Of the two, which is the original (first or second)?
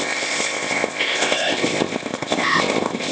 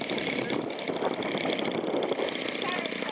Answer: second